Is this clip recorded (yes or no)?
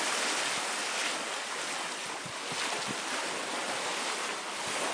yes